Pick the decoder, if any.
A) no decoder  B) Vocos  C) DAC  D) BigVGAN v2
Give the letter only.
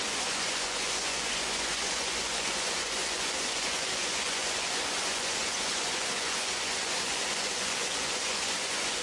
B